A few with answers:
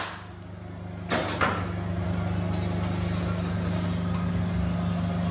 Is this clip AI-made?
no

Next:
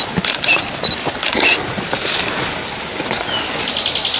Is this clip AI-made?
no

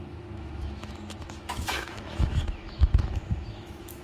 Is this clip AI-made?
yes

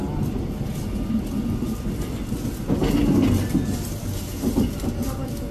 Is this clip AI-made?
no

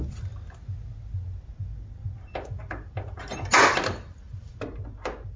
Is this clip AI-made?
no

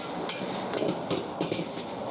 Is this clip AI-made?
no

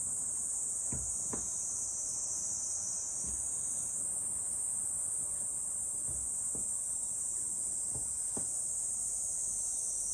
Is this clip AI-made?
no